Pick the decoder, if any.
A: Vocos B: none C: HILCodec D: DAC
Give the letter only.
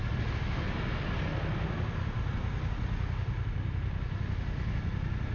B